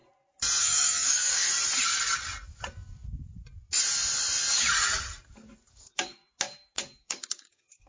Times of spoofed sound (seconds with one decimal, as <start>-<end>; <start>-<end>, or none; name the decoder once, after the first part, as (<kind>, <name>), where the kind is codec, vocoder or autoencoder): 0.6-1.5 (codec, DAC); 5.7-6.2; 7.0-7.9